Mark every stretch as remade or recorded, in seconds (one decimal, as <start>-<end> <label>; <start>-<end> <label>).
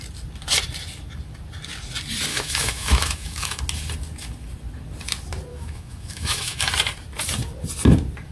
0.0-2.3 recorded; 2.3-3.6 remade; 3.6-5.5 recorded; 5.5-6.7 remade; 6.7-8.3 recorded